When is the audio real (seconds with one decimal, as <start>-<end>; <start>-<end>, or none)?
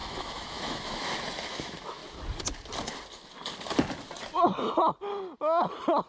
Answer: 2.0-6.1